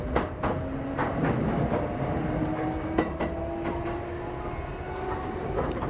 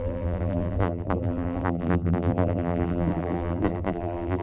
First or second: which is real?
first